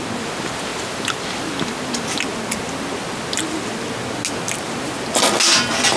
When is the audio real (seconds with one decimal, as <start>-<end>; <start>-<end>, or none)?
0.0-6.0